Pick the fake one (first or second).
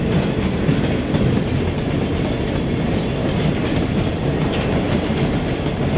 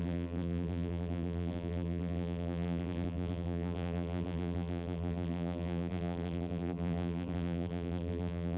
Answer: second